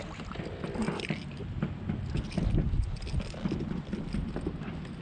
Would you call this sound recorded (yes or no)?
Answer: yes